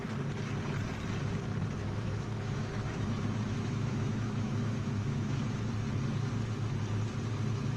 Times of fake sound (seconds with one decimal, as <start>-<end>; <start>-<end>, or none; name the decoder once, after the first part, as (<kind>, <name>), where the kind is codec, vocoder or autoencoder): 1.8-5.7 (autoencoder, DAC-VAE)